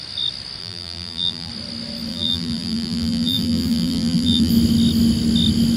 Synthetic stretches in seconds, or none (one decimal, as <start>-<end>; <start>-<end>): 0.6-1.5; 2.1-4.5